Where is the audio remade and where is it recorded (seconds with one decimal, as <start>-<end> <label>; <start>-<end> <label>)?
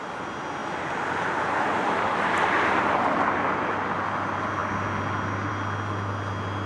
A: 0.0-6.7 recorded